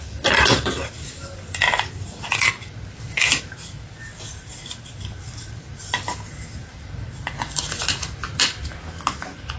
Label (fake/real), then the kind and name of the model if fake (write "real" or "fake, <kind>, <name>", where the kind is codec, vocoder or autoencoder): real